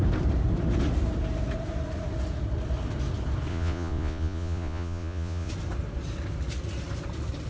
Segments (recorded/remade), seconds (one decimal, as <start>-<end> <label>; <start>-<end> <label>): 0.0-3.5 recorded; 3.5-5.5 remade; 5.5-7.5 recorded